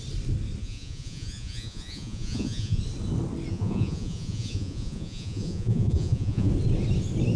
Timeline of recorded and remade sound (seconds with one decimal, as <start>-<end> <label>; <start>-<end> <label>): 0.0-0.6 recorded; 0.6-2.8 remade; 2.8-3.5 recorded; 3.5-6.5 remade; 6.5-7.4 recorded